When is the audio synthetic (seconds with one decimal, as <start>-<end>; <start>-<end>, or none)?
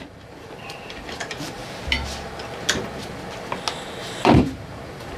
0.0-1.6; 3.8-5.2